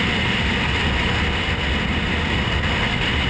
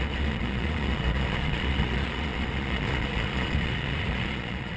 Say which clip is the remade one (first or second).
second